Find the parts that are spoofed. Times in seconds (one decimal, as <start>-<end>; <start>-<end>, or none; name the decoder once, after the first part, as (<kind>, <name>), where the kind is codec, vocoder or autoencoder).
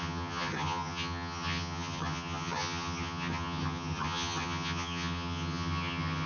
0.0-6.3 (vocoder, HiFi-GAN)